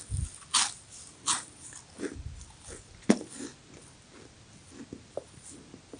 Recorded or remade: recorded